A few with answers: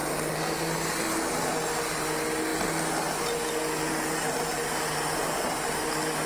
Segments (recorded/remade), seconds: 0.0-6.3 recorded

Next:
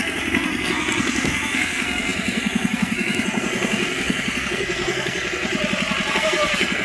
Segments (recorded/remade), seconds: 0.0-5.5 remade; 5.5-6.1 recorded; 6.1-6.8 remade

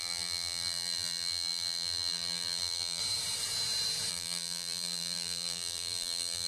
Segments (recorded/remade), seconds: 0.0-3.0 remade; 3.0-4.1 recorded; 4.1-6.5 remade

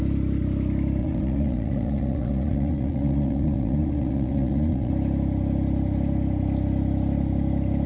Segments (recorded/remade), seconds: 0.0-1.0 recorded; 1.0-4.9 remade; 4.9-7.9 recorded

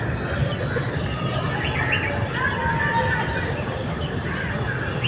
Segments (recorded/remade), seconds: 0.0-5.1 recorded

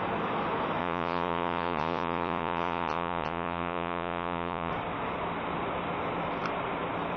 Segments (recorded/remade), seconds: 0.0-0.8 recorded; 0.8-4.7 remade; 4.7-7.2 recorded

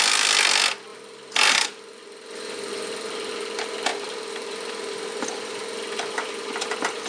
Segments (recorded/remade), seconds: 0.0-0.9 recorded; 0.9-3.3 remade; 3.3-3.9 recorded; 3.9-7.1 remade